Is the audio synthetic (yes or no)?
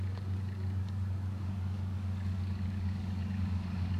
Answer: yes